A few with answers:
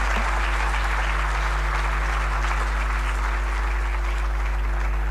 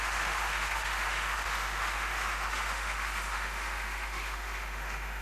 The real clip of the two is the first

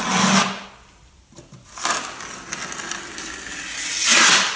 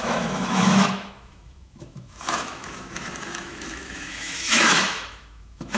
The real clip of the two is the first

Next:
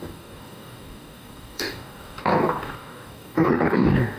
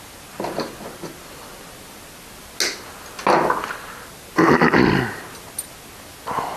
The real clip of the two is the second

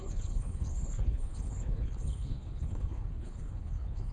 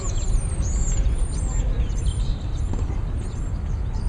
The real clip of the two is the second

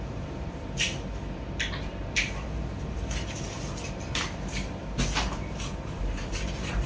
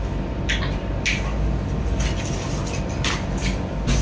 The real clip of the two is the second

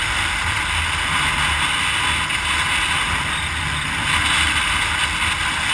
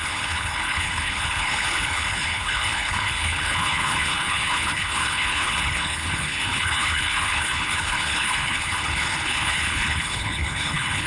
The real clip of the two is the first